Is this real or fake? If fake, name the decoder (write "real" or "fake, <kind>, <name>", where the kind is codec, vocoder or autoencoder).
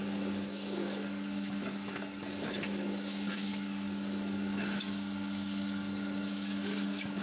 fake, codec, DAC